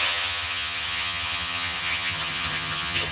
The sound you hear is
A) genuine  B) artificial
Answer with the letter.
B